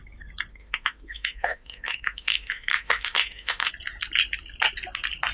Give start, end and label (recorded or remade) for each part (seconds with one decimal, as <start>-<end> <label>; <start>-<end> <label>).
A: 0.0-0.5 recorded; 0.5-3.7 remade; 3.7-5.3 recorded